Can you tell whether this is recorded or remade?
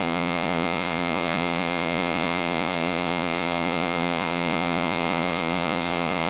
remade